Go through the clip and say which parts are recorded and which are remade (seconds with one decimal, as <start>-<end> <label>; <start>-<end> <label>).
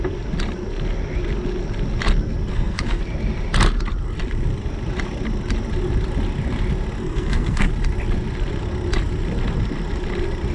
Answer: 0.0-2.5 recorded; 2.5-3.0 remade; 3.0-7.0 recorded; 7.0-7.7 remade; 7.7-10.5 recorded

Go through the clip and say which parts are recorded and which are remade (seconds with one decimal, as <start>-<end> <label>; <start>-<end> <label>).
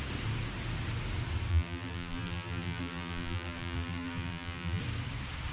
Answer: 0.0-1.5 recorded; 1.5-4.8 remade; 4.8-5.5 recorded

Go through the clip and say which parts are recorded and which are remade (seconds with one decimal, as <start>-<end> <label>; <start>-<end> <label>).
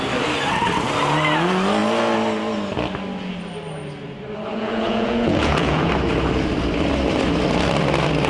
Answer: 0.0-4.5 recorded; 4.5-5.9 remade; 5.9-8.3 recorded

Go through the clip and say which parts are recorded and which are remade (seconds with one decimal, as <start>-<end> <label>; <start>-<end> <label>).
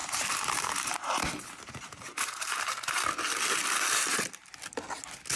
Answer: 0.0-3.2 remade; 3.2-5.4 recorded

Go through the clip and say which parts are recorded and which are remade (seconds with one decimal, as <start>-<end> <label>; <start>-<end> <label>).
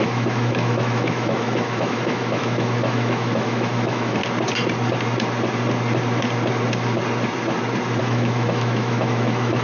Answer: 0.0-4.2 remade; 4.2-8.0 recorded; 8.0-9.6 remade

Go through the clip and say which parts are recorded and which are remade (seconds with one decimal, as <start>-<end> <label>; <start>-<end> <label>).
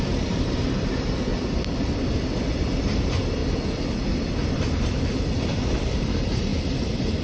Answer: 0.0-1.3 remade; 1.3-2.8 recorded; 2.8-3.4 remade; 3.4-4.3 recorded; 4.3-6.5 remade; 6.5-7.2 recorded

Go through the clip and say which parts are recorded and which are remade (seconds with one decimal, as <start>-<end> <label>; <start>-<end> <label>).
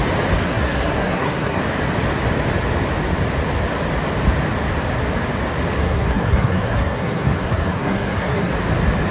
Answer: 0.0-0.4 recorded; 0.4-1.6 remade; 1.6-5.8 recorded; 5.8-8.5 remade; 8.5-9.1 recorded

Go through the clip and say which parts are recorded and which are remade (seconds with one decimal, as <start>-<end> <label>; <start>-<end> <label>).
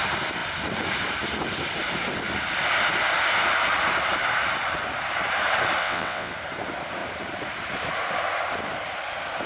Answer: 0.0-5.8 recorded; 5.8-6.3 remade; 6.3-9.5 recorded